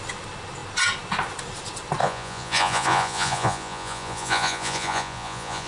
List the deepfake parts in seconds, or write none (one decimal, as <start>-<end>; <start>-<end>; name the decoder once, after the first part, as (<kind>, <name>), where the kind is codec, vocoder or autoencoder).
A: 2.0-5.7 (vocoder, Vocos)